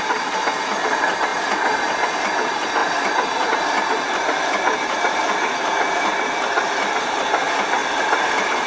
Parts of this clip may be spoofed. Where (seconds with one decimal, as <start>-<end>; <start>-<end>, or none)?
none